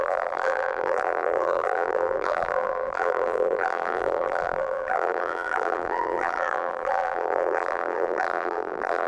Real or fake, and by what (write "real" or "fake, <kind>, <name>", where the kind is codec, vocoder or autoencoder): fake, vocoder, BigVGAN v2